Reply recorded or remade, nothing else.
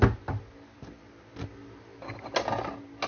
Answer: recorded